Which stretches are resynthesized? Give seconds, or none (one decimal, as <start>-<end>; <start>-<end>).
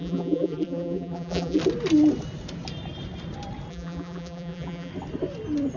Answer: 0.0-1.6; 3.7-4.9